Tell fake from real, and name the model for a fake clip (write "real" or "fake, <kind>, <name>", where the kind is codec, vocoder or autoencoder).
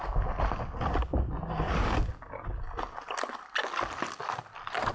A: real